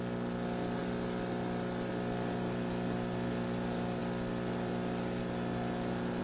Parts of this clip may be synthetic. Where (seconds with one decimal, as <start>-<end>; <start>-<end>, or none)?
none